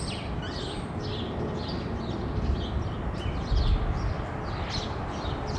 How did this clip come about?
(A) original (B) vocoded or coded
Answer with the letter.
A